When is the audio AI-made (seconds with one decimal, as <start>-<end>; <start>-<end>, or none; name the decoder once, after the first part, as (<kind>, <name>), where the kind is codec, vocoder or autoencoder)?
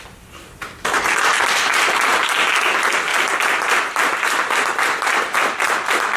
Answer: none